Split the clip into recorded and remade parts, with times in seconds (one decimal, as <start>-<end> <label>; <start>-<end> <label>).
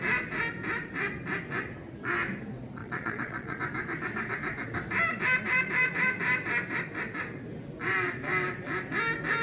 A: 0.0-2.8 recorded; 2.8-3.6 remade; 3.6-9.4 recorded